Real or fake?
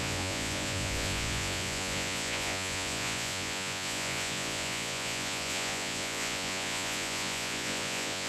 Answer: fake